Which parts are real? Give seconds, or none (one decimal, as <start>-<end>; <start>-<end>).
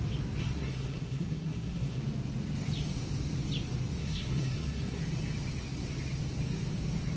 0.0-0.4; 2.0-4.0; 5.0-7.2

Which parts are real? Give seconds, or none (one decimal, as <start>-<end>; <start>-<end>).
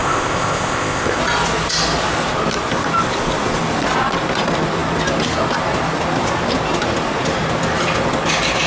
1.2-8.7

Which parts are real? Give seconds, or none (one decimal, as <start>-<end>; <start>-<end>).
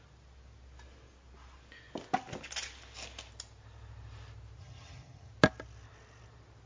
0.0-4.6; 5.3-6.7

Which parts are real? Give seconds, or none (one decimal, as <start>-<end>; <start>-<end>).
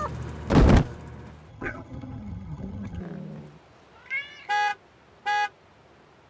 0.0-1.5; 3.0-6.3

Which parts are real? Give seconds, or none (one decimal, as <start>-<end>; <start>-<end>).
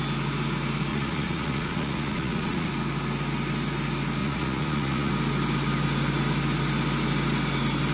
0.0-0.9; 2.7-4.2; 5.1-7.9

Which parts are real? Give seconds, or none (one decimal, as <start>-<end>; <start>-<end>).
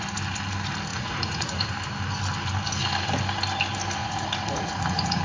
0.0-0.9; 1.7-4.0